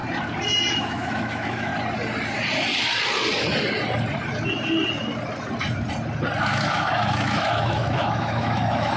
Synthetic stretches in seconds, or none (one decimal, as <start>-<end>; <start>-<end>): 0.7-1.7; 6.4-9.0